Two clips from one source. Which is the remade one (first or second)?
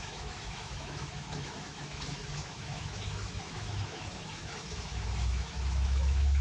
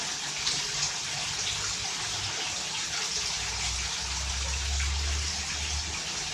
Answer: first